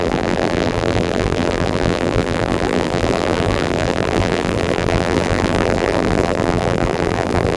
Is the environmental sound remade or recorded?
remade